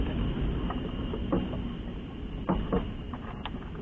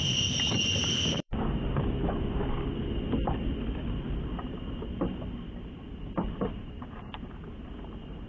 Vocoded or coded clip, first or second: second